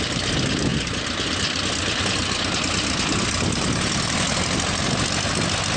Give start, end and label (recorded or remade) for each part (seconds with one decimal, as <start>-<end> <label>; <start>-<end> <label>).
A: 0.0-5.8 recorded